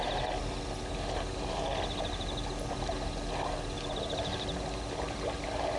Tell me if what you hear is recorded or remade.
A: recorded